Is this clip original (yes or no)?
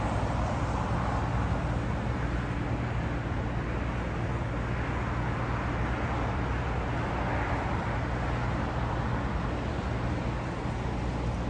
yes